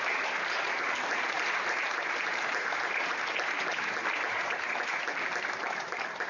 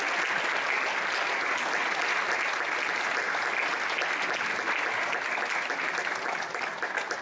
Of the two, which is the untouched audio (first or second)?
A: second